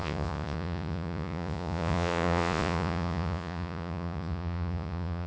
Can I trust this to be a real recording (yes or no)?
no